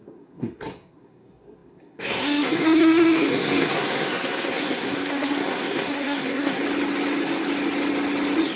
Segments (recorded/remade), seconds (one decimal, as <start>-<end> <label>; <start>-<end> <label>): 0.0-6.6 remade; 6.6-8.6 recorded